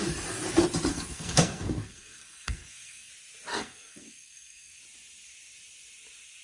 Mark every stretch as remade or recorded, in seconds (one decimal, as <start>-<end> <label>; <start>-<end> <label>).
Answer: 0.0-0.9 recorded; 0.9-3.1 remade; 3.1-3.5 recorded; 3.5-4.8 remade; 4.8-6.4 recorded